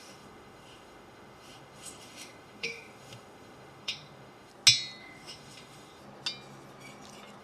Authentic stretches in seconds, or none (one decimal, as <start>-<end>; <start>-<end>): 4.5-5.0; 6.0-7.4